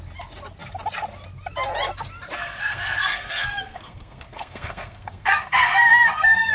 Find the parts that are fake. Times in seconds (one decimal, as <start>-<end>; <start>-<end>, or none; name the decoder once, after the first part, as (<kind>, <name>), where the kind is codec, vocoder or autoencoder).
2.4-6.5 (codec, SNAC)